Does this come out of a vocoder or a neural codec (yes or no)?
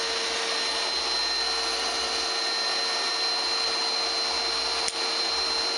no